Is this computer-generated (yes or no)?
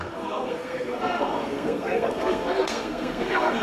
yes